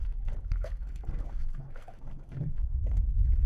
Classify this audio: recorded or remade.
remade